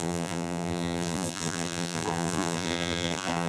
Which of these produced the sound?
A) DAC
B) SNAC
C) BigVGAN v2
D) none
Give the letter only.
C